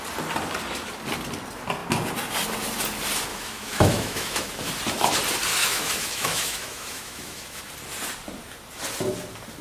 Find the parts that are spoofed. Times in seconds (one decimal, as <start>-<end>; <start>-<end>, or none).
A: 3.3-4.7; 5.5-7.6